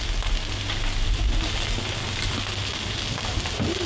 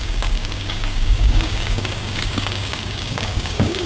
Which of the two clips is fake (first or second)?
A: second